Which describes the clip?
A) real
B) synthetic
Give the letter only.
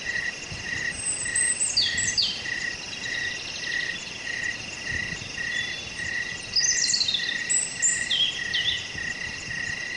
A